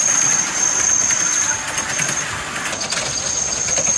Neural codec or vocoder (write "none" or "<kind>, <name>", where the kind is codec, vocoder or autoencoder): none